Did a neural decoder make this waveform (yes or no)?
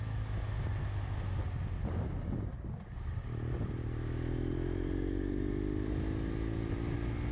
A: no